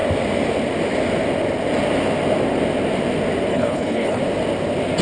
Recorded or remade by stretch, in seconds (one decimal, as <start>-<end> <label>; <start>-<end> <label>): 0.0-3.5 recorded; 3.5-4.2 remade; 4.2-5.0 recorded